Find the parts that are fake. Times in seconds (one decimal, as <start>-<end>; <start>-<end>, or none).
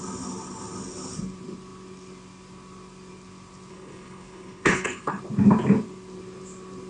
3.7-5.2